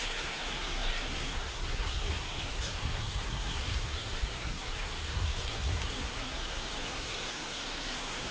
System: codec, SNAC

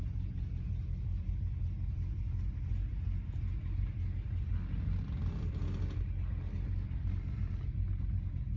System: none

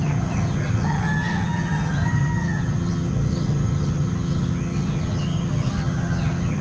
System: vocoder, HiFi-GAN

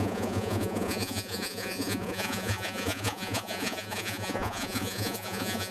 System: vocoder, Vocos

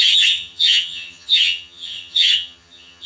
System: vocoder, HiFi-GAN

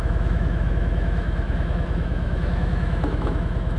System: autoencoder, DAC-VAE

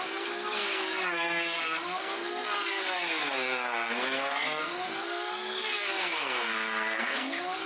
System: codec, SNAC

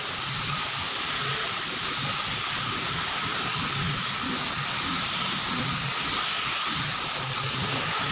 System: none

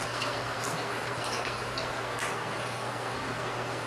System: codec, SNAC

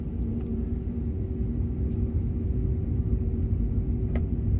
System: none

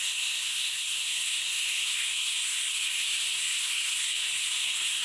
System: codec, SNAC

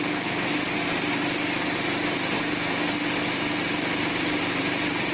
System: none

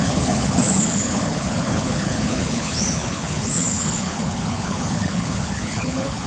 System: codec, HILCodec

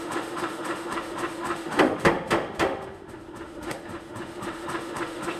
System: autoencoder, DAC-VAE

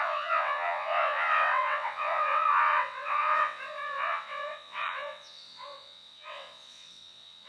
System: vocoder, WaveNeXt